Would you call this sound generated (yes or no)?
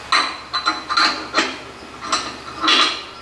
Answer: no